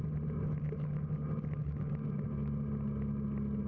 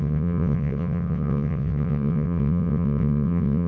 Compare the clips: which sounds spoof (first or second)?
second